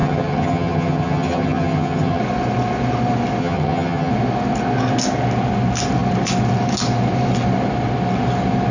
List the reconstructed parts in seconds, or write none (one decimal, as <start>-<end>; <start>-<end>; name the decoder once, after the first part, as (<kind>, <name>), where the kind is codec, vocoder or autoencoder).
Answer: 0.0-2.2 (vocoder, HiFi-GAN); 3.4-4.1